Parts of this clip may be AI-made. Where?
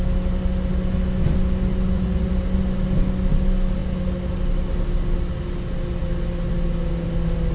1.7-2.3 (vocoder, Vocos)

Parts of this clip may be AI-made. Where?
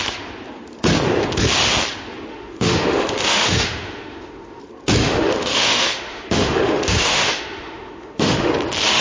2.3-4.6 (autoencoder, DAC-VAE); 5.0-8.5